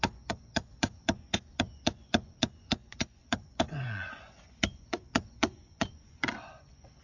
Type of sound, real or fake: fake